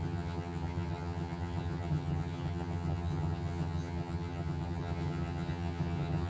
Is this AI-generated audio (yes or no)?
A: yes